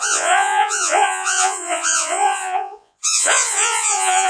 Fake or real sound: fake